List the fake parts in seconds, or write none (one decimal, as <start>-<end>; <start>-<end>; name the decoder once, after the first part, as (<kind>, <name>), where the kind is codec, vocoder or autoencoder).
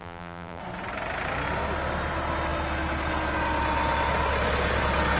0.0-0.6 (vocoder, BigVGAN v2)